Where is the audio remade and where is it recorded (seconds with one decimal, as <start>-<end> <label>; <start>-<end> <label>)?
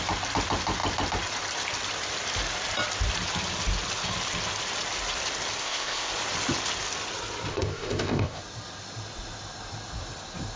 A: 0.0-5.6 recorded; 5.6-6.1 remade; 6.1-7.5 recorded; 7.5-8.4 remade; 8.4-10.6 recorded